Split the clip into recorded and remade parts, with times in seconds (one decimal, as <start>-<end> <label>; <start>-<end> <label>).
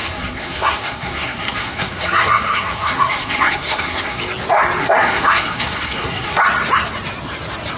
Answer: 0.0-4.2 remade; 4.2-4.8 recorded; 4.8-6.4 remade; 6.4-7.8 recorded